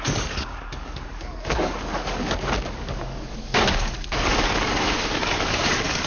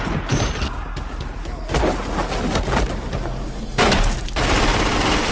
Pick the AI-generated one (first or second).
first